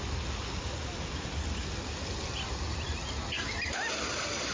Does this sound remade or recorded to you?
recorded